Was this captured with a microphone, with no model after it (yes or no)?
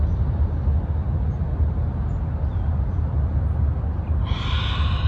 yes